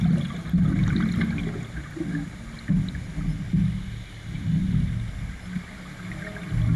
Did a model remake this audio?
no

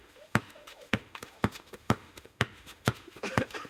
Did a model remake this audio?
yes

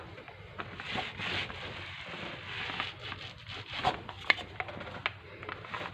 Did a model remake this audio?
no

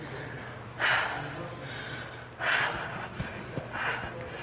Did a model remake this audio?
no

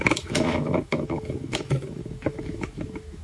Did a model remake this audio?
yes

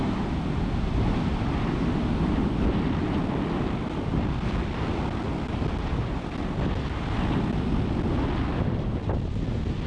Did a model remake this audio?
no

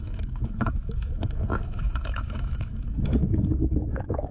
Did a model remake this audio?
yes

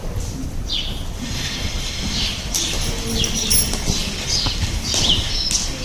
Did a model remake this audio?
no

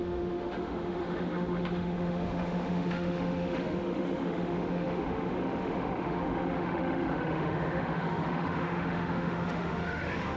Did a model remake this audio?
yes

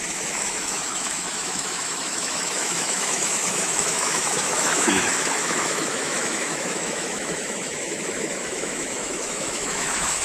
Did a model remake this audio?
yes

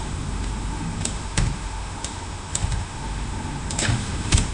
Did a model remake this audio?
yes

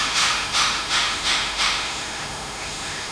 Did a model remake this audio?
yes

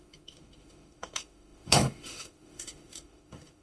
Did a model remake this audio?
yes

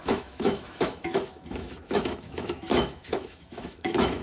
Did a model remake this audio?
yes